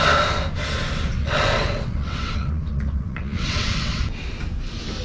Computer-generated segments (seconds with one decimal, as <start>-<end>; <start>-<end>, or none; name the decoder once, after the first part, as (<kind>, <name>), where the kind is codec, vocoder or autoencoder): 1.2-4.0 (vocoder, WaveNeXt)